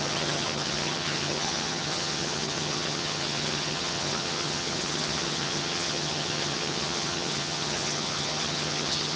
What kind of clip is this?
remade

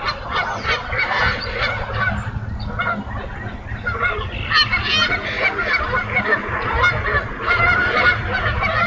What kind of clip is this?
recorded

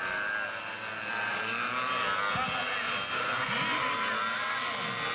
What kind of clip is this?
recorded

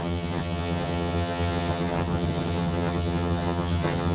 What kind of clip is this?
remade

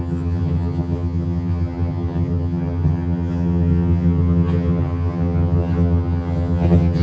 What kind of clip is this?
remade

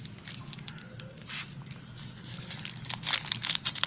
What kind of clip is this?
recorded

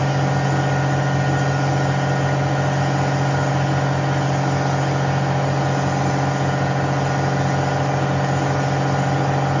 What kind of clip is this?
recorded